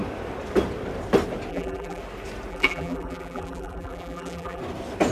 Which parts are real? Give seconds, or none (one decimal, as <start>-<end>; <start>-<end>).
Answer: 0.0-1.5; 2.0-2.5; 4.6-5.1